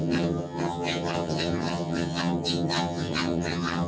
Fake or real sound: fake